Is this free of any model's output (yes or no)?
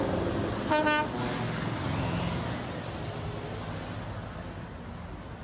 yes